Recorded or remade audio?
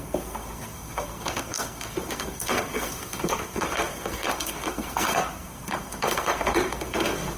remade